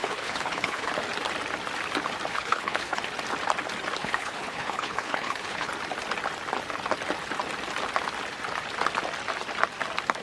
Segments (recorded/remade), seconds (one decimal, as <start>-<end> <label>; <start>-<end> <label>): 0.0-0.9 remade; 0.9-2.3 recorded; 2.3-3.0 remade; 3.0-4.0 recorded; 4.0-5.7 remade; 5.7-10.2 recorded